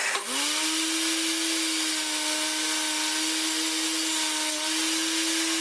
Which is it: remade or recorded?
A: recorded